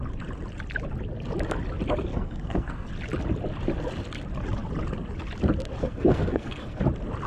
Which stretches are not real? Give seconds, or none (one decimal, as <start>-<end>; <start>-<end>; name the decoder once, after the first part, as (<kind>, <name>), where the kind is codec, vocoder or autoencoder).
2.1-2.9 (codec, SNAC); 5.8-6.8

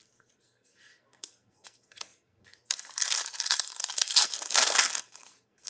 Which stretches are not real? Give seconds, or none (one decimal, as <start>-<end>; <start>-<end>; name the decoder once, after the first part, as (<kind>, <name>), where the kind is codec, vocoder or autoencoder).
0.0-5.7 (codec, SNAC)